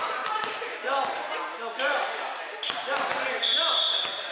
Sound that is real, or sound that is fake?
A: real